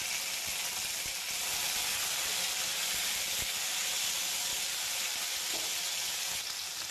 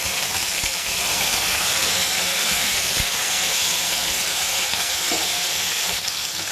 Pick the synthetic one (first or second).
second